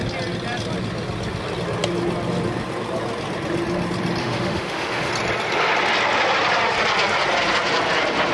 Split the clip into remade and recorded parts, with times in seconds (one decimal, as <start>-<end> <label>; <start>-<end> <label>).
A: 0.0-4.2 recorded; 4.2-5.1 remade; 5.1-8.3 recorded